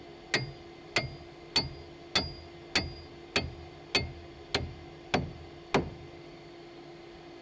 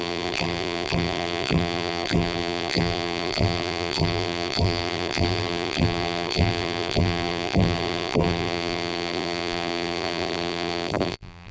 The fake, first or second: second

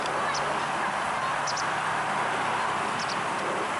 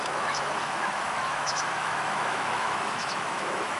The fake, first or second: second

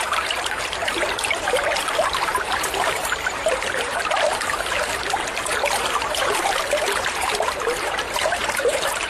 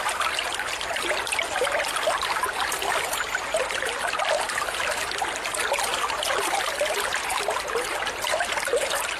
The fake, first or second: first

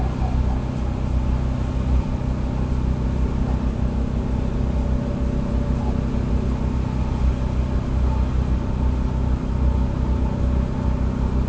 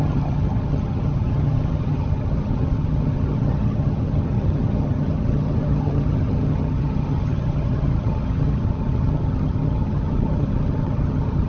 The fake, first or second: second